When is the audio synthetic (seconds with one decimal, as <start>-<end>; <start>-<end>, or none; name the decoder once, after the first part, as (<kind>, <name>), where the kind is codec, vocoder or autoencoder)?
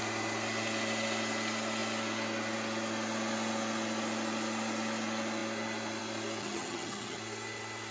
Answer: 6.4-7.2 (vocoder, HiFi-GAN)